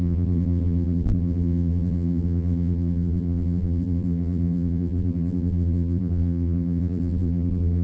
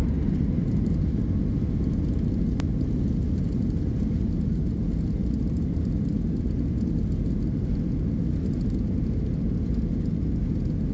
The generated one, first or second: first